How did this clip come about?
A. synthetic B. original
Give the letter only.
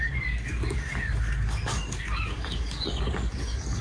A